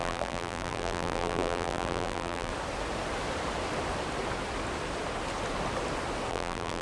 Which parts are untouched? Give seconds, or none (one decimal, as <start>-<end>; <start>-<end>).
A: 2.5-6.3